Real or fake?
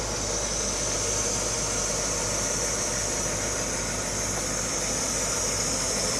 real